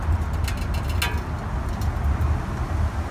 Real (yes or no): yes